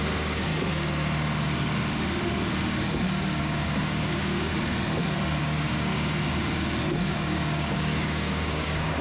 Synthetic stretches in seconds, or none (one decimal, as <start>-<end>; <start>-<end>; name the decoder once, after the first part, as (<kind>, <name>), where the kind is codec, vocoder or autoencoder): 0.0-0.5 (codec, DAC); 3.4-4.5; 5.4-5.9; 7.1-9.0